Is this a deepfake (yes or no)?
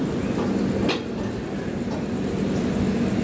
no